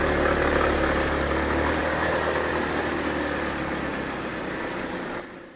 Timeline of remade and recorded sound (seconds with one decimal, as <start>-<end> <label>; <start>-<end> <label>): 0.0-5.6 recorded

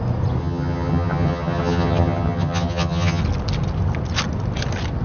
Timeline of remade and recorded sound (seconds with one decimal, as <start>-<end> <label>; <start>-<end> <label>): 0.0-0.4 recorded; 0.4-3.2 remade; 3.2-5.0 recorded

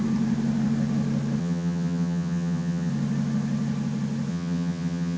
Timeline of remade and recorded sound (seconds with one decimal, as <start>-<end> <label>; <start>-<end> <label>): 0.0-1.4 recorded; 1.4-2.9 remade; 2.9-4.3 recorded; 4.3-5.2 remade

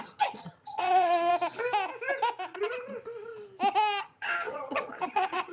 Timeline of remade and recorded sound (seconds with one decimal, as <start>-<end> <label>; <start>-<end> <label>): 0.0-1.3 remade; 1.3-4.0 recorded; 4.0-5.5 remade

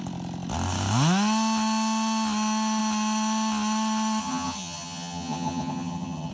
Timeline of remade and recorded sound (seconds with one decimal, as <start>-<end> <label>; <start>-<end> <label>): 0.0-4.2 recorded; 4.2-6.3 remade

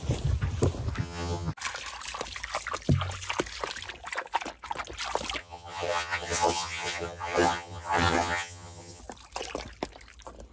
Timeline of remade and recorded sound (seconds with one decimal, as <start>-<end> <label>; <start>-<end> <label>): 0.0-1.0 recorded; 1.0-1.5 remade; 1.5-5.4 recorded; 5.4-9.0 remade; 9.0-10.5 recorded